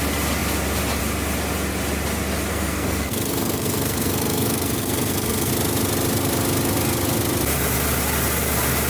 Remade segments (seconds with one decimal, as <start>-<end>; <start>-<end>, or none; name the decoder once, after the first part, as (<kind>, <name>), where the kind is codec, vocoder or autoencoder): 2.5-5.5 (codec, SNAC)

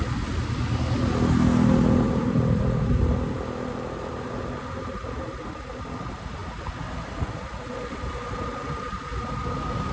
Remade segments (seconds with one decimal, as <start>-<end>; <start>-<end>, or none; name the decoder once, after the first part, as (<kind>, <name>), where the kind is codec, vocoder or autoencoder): none

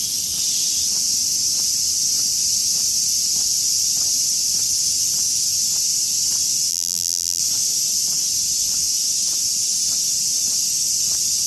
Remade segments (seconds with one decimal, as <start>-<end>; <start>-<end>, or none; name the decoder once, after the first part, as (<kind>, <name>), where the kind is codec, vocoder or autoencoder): 6.7-7.4 (vocoder, BigVGAN v2)

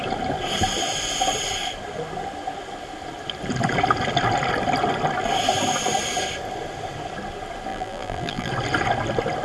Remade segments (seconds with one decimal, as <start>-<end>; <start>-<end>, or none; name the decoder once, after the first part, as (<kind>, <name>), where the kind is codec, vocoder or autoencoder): 7.7-8.5 (vocoder, BigVGAN v2)

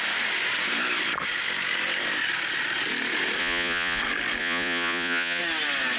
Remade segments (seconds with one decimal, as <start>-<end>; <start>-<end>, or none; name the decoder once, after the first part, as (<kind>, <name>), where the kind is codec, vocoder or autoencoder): 3.4-4.0 (vocoder, Vocos); 4.4-5.4